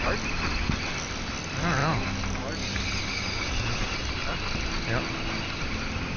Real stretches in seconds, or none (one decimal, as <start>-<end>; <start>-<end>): 0.0-6.2